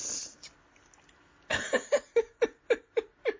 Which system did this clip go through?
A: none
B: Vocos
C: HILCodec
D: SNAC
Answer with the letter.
A